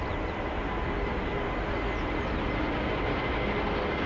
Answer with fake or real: real